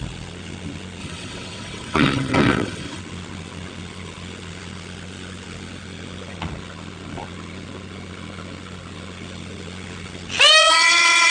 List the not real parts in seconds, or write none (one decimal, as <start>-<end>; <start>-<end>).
1.0-3.0; 10.6-11.3